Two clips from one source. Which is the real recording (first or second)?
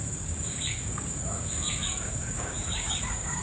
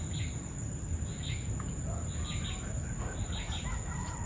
second